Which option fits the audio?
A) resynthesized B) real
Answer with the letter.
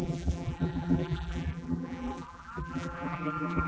A